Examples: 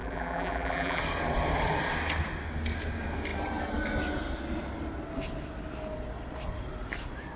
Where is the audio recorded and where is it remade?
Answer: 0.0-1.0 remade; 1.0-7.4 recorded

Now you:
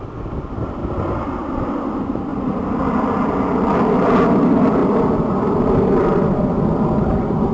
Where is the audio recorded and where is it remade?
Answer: 0.0-2.3 recorded; 2.3-3.1 remade; 3.1-4.8 recorded; 4.8-6.8 remade; 6.8-7.5 recorded

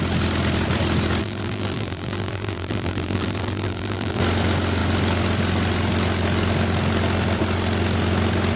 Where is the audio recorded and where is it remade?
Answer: 0.0-1.2 recorded; 1.2-4.2 remade; 4.2-8.6 recorded

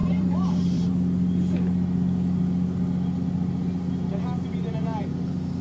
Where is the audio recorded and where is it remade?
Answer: 0.0-0.9 remade; 0.9-5.6 recorded